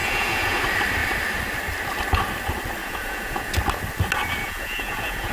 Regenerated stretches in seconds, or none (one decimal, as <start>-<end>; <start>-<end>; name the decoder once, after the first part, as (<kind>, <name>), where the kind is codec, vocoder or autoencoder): 0.0-0.6 (vocoder, Vocos); 2.8-3.5; 4.4-5.3